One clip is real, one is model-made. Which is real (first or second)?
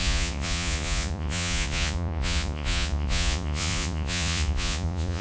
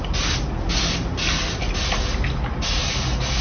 second